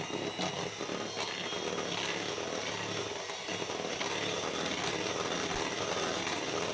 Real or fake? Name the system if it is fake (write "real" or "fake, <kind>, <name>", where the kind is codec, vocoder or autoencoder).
real